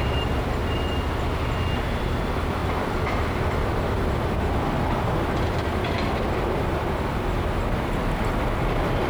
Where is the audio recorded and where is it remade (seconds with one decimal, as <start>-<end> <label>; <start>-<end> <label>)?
0.0-0.6 remade; 0.6-2.0 recorded; 2.0-9.1 remade